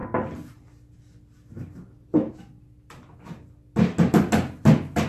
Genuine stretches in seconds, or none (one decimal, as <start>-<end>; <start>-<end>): 0.0-5.1